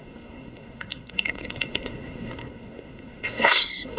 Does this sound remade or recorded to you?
remade